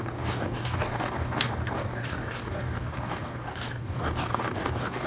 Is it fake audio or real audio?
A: fake